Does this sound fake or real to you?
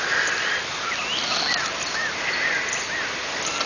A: real